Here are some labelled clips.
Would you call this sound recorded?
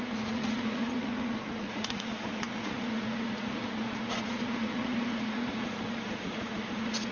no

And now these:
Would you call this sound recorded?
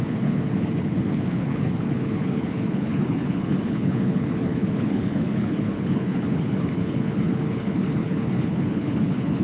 no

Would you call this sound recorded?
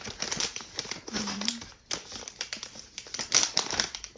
no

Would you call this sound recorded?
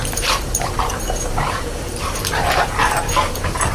no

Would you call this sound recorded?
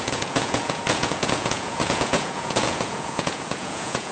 no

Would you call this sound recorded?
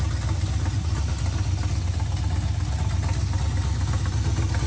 yes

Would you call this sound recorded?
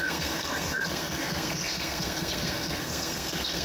no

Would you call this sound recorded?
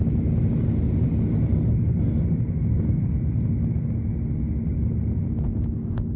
yes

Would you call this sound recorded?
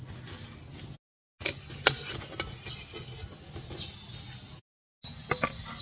yes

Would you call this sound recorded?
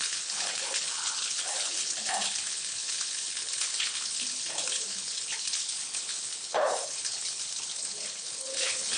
no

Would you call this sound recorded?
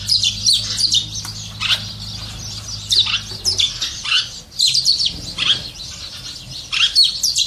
yes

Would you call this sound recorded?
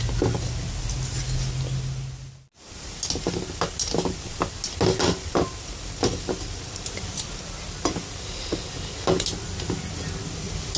yes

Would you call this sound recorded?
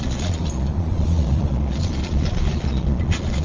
no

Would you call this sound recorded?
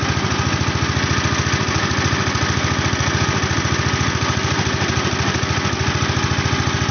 yes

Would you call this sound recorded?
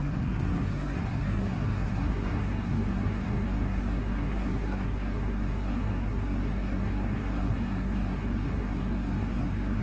no